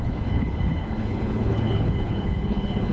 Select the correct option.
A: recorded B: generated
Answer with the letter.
B